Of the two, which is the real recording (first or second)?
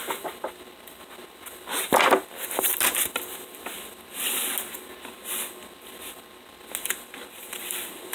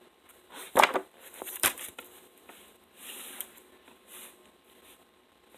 first